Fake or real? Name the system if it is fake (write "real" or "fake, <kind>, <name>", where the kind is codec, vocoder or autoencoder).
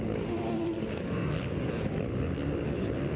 real